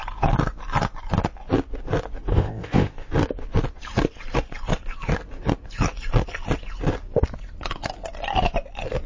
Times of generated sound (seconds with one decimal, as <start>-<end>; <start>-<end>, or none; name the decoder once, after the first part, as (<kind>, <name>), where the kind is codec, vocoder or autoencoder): 2.3-3.1 (codec, ZipCodec)